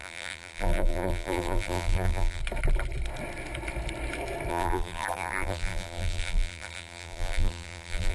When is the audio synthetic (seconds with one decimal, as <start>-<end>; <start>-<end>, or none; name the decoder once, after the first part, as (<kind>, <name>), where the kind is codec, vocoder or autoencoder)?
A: 0.0-2.4 (vocoder, BigVGAN v2); 4.5-8.1